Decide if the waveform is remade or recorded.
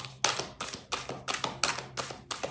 recorded